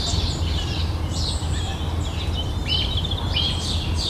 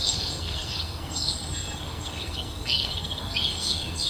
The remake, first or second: second